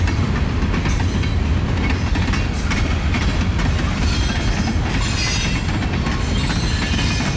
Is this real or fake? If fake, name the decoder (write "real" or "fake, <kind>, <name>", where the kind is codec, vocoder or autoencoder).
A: real